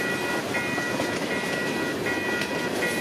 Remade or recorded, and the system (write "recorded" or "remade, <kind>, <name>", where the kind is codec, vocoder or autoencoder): recorded